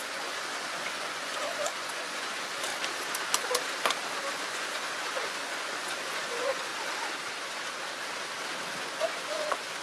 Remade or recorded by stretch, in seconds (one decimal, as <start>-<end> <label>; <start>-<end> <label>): 0.0-2.7 remade; 2.7-4.3 recorded; 4.3-6.7 remade; 6.7-8.8 recorded; 8.8-9.8 remade

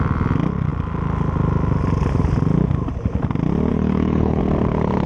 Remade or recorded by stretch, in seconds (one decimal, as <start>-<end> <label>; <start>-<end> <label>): 0.0-3.7 recorded; 3.7-4.4 remade; 4.4-5.1 recorded

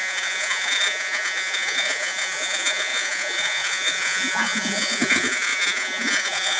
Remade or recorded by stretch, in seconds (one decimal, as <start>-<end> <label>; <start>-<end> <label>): 0.0-6.6 remade

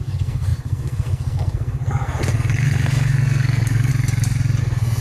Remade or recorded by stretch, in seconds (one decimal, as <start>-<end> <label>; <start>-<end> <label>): 0.0-3.9 remade; 3.9-4.6 recorded; 4.6-5.0 remade

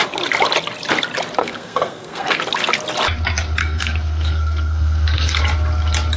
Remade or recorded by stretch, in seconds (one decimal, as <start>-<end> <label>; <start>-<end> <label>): 0.0-1.4 recorded; 1.4-2.4 remade; 2.4-3.6 recorded; 3.6-5.4 remade; 5.4-6.2 recorded

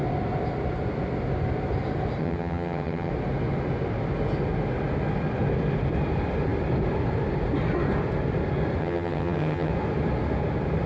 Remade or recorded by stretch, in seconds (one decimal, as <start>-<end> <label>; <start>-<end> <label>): 0.0-2.2 recorded; 2.2-3.1 remade; 3.1-8.8 recorded; 8.8-9.7 remade; 9.7-10.9 recorded

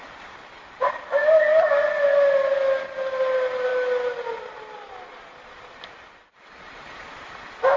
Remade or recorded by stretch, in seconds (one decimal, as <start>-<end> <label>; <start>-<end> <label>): 0.0-7.8 recorded

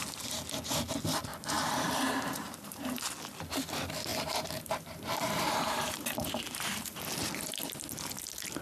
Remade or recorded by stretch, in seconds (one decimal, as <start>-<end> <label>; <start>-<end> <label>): 0.0-1.3 recorded; 1.3-3.1 remade; 3.1-4.1 recorded; 4.1-7.0 remade; 7.0-8.6 recorded